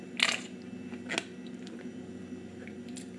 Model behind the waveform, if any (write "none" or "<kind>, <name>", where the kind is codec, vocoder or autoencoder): none